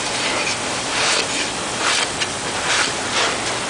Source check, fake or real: real